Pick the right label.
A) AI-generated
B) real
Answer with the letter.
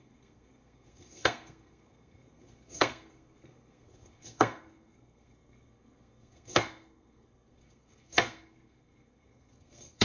A